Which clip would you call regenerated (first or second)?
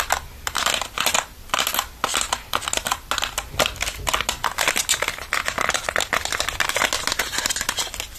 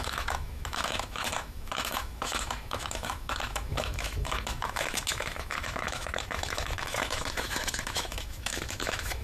second